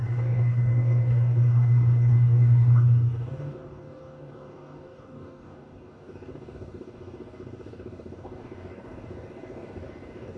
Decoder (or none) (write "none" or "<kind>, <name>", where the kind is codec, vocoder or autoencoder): codec, DAC